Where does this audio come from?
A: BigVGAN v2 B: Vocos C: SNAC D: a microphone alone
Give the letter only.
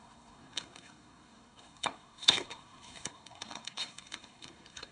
C